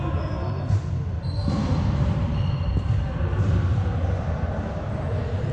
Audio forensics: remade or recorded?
recorded